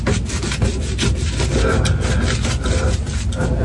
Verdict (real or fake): real